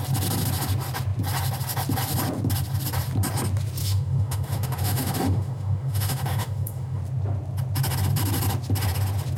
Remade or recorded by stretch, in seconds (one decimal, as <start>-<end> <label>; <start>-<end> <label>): 0.0-3.8 recorded; 3.8-7.0 remade; 7.0-9.4 recorded